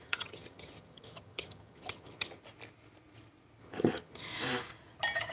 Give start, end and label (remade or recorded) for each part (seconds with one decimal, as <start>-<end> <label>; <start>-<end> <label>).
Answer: 0.0-2.4 remade; 2.4-3.6 recorded; 3.6-4.3 remade; 4.3-5.3 recorded